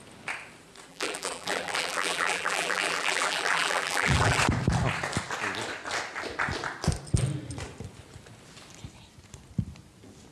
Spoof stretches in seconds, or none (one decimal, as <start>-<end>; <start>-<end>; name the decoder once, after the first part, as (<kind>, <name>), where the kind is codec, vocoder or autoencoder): 0.9-4.4 (vocoder, BigVGAN v2)